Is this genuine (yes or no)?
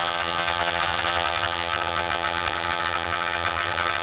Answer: no